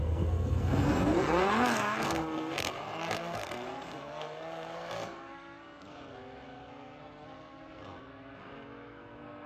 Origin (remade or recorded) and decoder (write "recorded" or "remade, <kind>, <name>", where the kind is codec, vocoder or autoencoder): remade, codec, SNAC